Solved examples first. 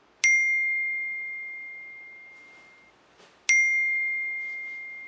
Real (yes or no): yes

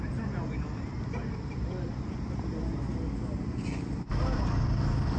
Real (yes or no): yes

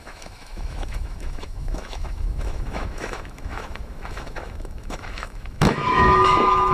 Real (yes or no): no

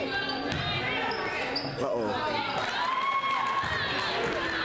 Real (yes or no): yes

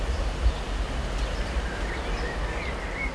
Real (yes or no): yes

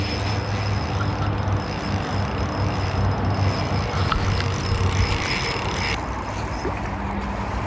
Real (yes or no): yes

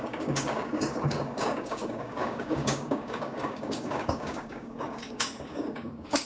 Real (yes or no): no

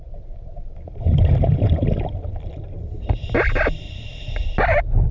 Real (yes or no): yes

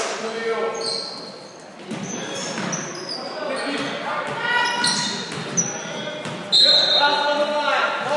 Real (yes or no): yes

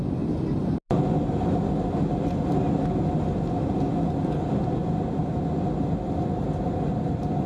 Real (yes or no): yes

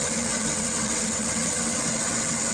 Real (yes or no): no